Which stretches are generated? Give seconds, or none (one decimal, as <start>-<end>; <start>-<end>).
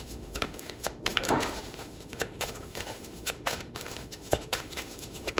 0.0-5.4